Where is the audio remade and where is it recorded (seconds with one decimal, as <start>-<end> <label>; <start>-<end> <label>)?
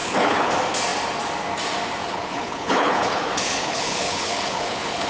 0.0-0.5 remade; 0.5-2.0 recorded; 2.0-5.1 remade